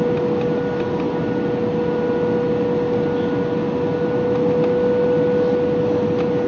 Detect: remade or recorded recorded